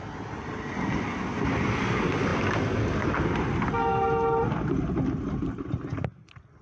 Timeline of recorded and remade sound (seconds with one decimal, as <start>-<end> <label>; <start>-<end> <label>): 0.0-6.6 recorded